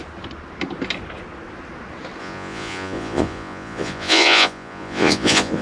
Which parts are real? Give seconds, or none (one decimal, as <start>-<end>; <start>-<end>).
0.0-2.2